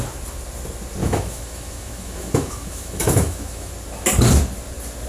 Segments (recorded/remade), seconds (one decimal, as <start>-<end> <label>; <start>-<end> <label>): 0.0-1.0 recorded; 1.0-3.7 remade; 3.7-5.1 recorded